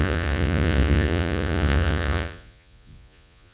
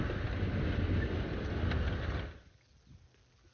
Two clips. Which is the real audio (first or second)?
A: second